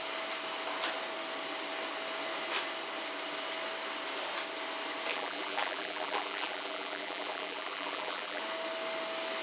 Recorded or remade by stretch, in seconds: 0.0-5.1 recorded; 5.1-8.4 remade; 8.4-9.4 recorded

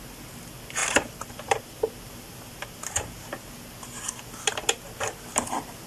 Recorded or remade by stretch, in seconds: 0.0-0.8 recorded; 0.8-2.3 remade; 2.3-5.9 recorded

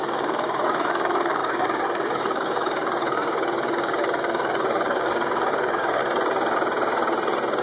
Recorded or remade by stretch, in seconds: 0.0-6.0 remade; 6.0-7.6 recorded

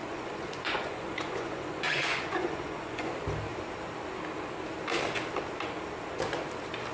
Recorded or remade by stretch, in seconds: 0.0-3.1 remade; 3.1-6.9 recorded

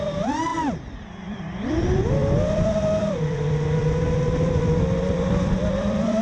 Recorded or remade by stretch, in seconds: 0.0-6.2 remade